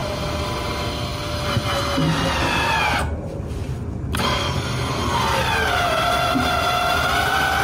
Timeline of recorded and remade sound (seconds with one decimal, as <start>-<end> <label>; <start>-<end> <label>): 0.0-7.6 recorded